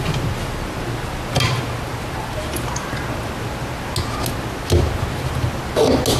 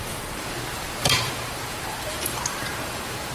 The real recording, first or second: first